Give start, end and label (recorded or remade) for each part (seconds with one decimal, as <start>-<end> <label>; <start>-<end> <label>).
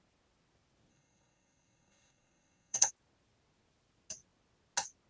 0.0-0.9 recorded; 0.9-2.9 remade; 2.9-5.1 recorded